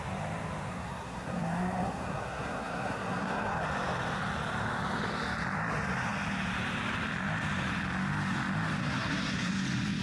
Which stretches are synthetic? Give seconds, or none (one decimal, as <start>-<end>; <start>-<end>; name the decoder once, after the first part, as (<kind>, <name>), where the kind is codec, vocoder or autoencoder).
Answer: 0.7-3.6 (codec, SNAC); 8.8-9.5